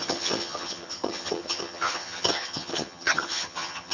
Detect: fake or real fake